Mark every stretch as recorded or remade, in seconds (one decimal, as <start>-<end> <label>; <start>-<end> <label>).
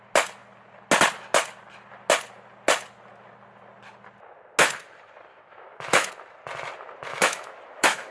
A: 0.0-5.3 recorded; 5.3-6.1 remade; 6.1-7.1 recorded; 7.1-8.1 remade